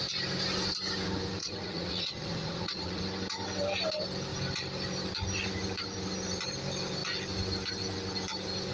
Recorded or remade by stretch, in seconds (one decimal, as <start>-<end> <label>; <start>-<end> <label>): 0.0-1.4 recorded; 1.4-3.0 remade; 3.0-8.7 recorded